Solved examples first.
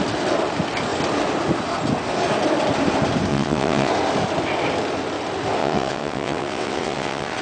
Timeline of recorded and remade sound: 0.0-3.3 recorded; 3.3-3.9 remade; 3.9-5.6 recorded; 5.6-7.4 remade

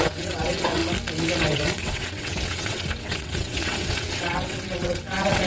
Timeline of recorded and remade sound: 0.0-0.8 remade; 0.8-1.4 recorded; 1.4-5.5 remade

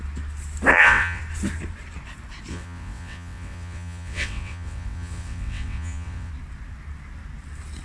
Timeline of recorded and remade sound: 0.0-0.7 recorded; 0.7-1.2 remade; 1.2-2.5 recorded; 2.5-6.3 remade; 6.3-7.8 recorded

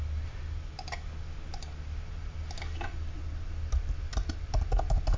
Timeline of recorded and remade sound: 0.0-5.2 recorded

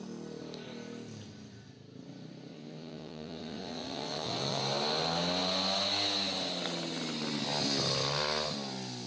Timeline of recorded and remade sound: 0.0-2.5 recorded; 2.5-4.6 remade; 4.6-9.1 recorded